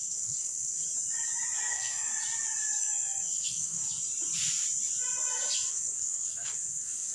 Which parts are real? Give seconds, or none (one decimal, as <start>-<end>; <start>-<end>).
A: 0.8-1.7; 2.1-2.8; 3.8-5.7